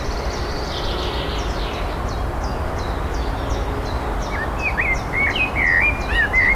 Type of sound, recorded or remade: recorded